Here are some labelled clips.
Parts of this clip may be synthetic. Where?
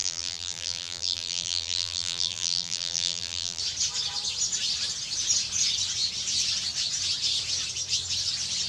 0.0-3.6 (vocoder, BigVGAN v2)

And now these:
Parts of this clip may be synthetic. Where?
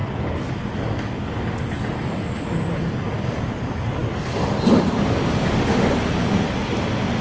none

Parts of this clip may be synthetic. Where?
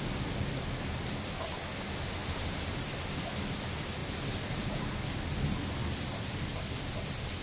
2.2-2.7 (vocoder, BigVGAN v2); 4.0-4.9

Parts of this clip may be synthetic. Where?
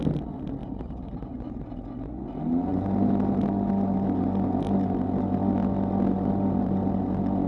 0.6-1.5 (vocoder, BigVGAN v2); 2.7-3.5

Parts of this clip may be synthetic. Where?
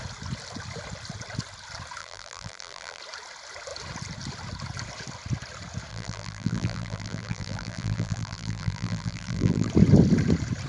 2.0-3.0 (vocoder, BigVGAN v2); 5.9-9.7